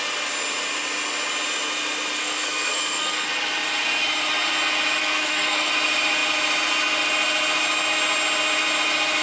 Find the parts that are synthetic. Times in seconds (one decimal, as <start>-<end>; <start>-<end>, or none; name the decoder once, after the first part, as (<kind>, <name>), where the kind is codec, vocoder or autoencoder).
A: 2.2-3.3 (codec, SNAC); 5.0-5.7